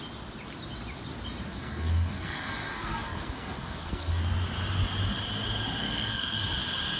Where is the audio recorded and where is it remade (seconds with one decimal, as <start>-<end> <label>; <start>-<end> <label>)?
0.0-1.5 recorded; 1.5-4.2 remade; 4.2-5.8 recorded; 5.8-6.4 remade; 6.4-7.0 recorded